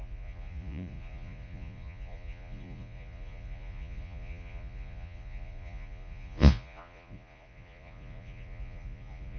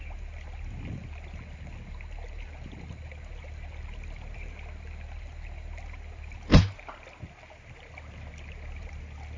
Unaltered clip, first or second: second